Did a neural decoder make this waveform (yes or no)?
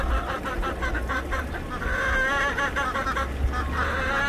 no